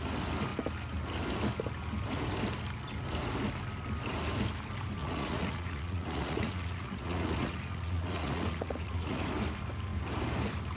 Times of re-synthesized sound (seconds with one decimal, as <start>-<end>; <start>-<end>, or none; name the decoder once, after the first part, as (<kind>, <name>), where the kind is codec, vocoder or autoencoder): 5.0-9.2 (vocoder, Vocos)